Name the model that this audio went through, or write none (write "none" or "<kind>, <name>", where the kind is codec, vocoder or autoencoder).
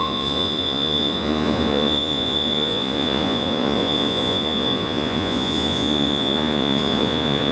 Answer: vocoder, Vocos